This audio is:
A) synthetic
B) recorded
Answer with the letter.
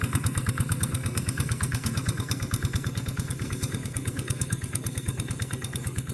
A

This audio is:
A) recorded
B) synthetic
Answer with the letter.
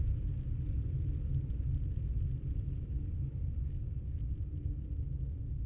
A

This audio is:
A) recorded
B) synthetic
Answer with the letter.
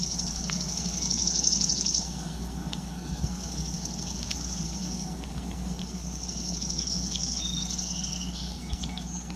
B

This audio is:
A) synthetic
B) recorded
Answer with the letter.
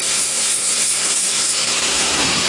A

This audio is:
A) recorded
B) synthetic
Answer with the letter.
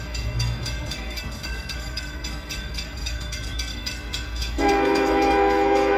B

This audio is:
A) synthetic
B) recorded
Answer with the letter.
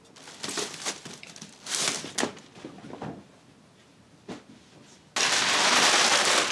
B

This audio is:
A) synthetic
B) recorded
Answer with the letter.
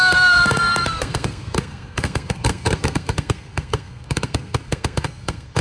A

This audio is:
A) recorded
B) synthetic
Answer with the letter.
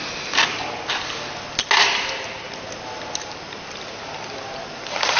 A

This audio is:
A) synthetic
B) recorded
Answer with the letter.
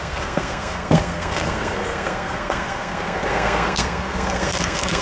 A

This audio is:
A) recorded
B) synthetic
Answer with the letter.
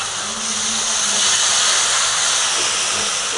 A